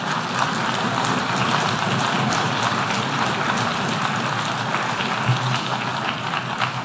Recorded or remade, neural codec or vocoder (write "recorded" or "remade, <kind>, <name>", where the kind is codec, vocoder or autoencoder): recorded